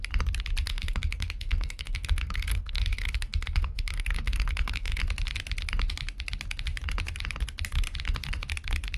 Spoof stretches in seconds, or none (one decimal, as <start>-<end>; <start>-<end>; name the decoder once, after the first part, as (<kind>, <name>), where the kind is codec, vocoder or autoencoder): 0.6-5.0 (codec, SNAC)